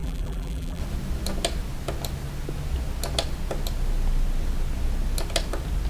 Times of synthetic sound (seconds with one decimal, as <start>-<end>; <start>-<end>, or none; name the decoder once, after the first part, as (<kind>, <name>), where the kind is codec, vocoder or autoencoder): 0.0-0.8 (vocoder, BigVGAN v2)